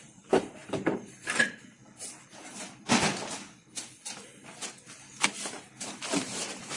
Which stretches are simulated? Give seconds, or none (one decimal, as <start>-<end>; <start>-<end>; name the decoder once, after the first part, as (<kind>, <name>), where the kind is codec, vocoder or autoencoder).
0.0-1.8 (vocoder, BigVGAN v2); 5.0-6.8